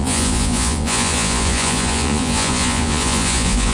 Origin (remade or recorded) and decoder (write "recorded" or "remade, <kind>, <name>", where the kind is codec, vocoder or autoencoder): remade, vocoder, Vocos